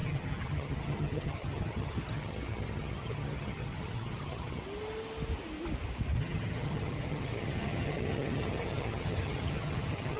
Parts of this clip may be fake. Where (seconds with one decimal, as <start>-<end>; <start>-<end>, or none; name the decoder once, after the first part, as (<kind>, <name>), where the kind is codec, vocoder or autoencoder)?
0.0-4.6 (vocoder, HiFi-GAN); 6.2-10.2